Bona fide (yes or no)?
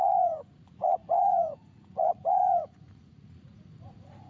no